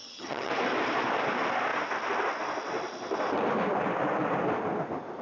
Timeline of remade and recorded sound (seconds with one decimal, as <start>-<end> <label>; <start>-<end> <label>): 0.0-0.5 remade; 0.5-5.2 recorded